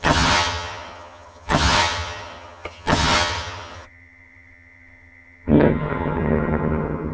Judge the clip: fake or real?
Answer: fake